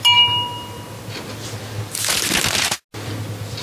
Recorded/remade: recorded